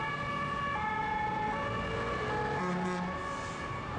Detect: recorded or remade recorded